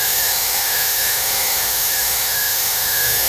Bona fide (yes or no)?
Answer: no